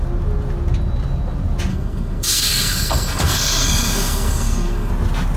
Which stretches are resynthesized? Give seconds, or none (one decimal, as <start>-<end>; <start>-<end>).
1.7-4.9